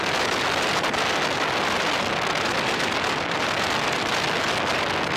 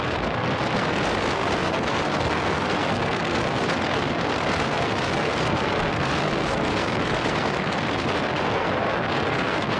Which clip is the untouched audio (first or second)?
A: first